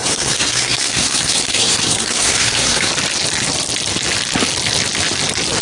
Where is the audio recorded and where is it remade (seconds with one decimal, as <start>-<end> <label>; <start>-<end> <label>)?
0.0-2.9 remade; 2.9-5.6 recorded